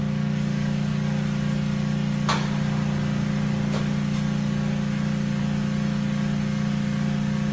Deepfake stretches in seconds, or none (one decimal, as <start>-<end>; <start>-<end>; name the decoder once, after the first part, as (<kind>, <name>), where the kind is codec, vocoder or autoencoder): none